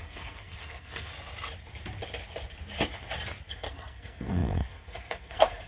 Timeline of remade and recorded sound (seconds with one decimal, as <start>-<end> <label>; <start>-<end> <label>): 0.0-1.1 remade; 1.1-3.5 recorded; 3.5-5.7 remade

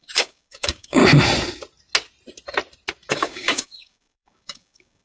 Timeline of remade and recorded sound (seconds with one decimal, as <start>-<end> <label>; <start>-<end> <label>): 0.0-1.0 remade; 1.0-3.1 recorded; 3.1-5.0 remade

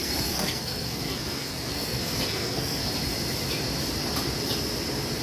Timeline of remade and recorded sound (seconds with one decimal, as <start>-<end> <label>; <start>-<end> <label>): 0.0-2.9 remade; 2.9-5.2 recorded

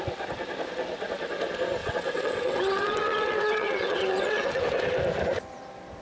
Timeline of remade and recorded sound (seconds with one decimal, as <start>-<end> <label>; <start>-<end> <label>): 0.0-1.8 recorded; 1.8-4.6 remade; 4.6-6.0 recorded

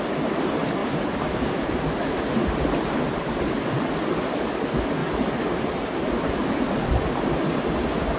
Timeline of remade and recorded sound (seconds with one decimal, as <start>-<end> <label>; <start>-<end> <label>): 0.0-0.8 recorded; 0.8-3.4 remade; 3.4-5.0 recorded; 5.0-6.7 remade; 6.7-8.2 recorded